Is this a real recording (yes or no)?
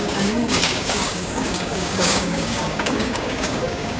no